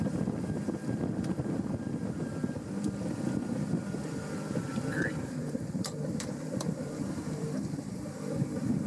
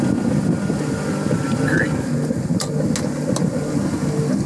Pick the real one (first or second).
second